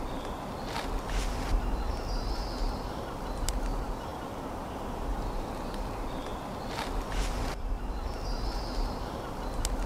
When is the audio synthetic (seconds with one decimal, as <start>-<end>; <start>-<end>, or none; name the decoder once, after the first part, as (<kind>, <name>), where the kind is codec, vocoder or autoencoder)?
none